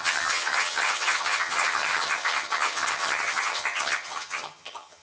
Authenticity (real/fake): fake